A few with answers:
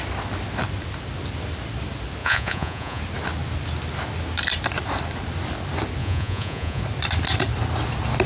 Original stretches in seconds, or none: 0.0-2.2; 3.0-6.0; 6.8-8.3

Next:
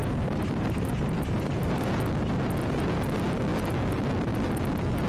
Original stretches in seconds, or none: 1.9-5.1

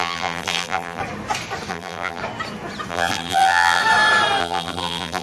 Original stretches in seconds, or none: 1.0-1.7; 2.2-2.9; 3.8-4.4